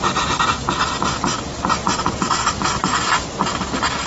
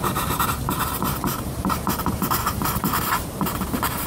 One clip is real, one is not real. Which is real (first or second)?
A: first